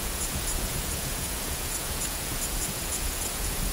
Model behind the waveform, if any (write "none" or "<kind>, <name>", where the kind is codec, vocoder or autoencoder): vocoder, Vocos